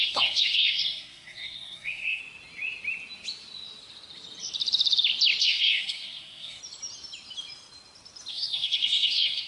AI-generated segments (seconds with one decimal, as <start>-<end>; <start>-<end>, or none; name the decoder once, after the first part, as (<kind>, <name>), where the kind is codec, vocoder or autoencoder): 0.0-2.2 (codec, SNAC); 5.4-6.6; 8.3-9.5